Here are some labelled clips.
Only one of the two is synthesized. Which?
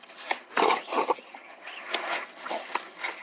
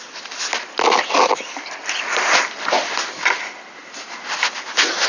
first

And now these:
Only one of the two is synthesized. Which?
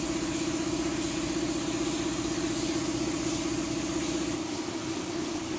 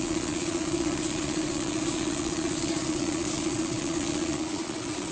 second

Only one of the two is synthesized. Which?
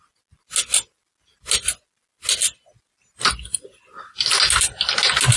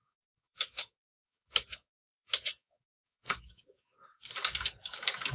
second